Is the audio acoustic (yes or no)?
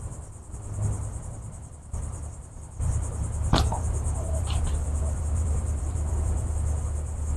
no